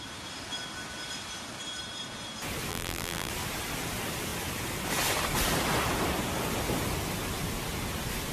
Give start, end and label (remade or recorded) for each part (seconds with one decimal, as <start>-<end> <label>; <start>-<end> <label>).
0.0-2.7 recorded; 2.7-3.3 remade; 3.3-8.3 recorded